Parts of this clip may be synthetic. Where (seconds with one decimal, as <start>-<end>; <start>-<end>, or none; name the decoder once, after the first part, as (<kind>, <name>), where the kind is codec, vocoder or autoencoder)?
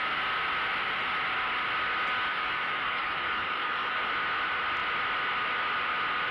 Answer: 2.3-4.1 (codec, DAC)